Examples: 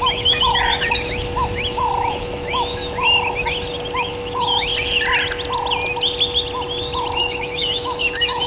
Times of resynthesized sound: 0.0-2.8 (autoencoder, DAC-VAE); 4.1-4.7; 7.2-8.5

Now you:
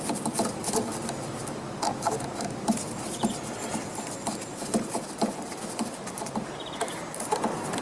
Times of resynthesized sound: 3.7-7.1 (vocoder, BigVGAN v2)

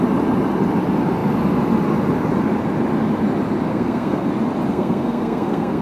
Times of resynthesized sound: 3.7-4.3 (codec, SNAC); 4.7-5.8

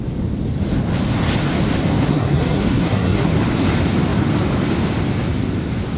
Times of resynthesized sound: 2.1-3.3 (codec, SNAC)

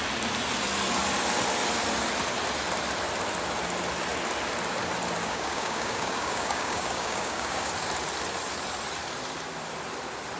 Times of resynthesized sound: 5.2-7.7 (codec, DAC)

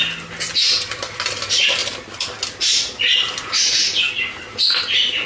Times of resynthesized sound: none

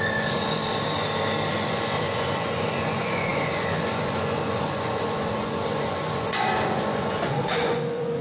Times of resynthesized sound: 0.0-0.6 (vocoder, Vocos); 1.5-8.2